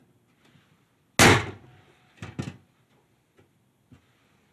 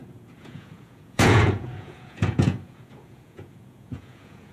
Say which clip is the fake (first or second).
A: second